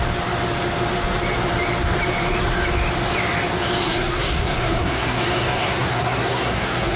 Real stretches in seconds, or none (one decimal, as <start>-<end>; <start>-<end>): 0.0-3.8